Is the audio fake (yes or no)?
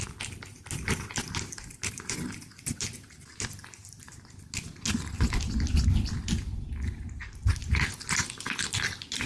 no